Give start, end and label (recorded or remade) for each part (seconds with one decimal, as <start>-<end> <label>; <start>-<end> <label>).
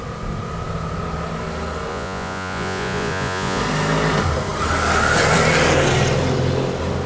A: 0.0-1.9 recorded; 1.9-3.6 remade; 3.6-7.1 recorded